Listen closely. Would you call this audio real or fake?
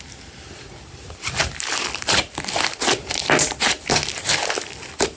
real